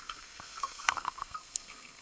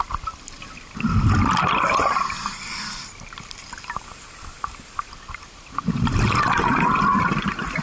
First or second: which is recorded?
second